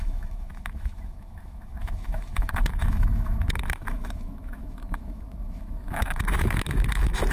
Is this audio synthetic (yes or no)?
yes